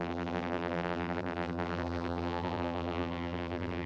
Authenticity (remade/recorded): remade